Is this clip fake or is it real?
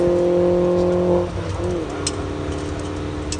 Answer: real